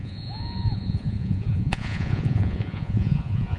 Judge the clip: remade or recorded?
remade